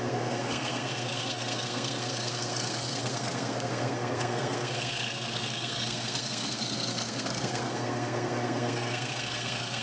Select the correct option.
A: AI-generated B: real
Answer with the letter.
A